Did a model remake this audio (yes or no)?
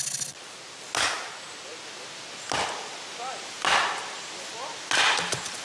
no